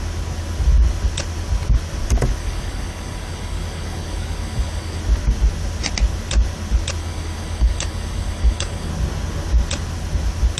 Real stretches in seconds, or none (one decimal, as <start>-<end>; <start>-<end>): 0.0-2.4; 5.0-7.0; 8.9-10.6